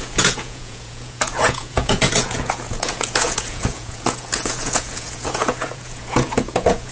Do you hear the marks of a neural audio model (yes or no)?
yes